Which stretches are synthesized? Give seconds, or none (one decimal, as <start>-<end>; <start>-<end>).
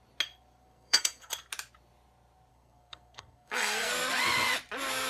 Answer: 0.6-1.3; 2.5-3.9